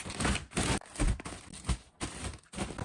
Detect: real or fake real